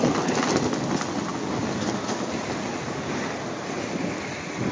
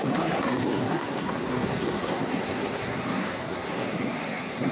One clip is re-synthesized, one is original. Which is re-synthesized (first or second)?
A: second